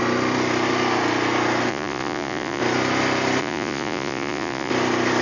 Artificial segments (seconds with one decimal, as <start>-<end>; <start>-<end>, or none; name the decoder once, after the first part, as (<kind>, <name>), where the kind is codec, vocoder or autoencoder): 1.7-2.6 (vocoder, Vocos); 3.4-4.7